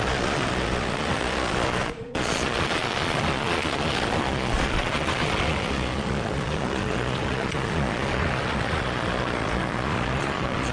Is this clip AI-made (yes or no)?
yes